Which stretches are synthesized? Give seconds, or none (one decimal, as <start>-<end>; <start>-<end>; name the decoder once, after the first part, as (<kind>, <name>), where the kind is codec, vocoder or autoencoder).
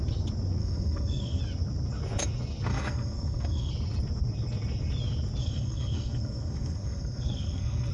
0.6-1.4 (codec, SNAC); 2.7-3.7; 5.4-7.9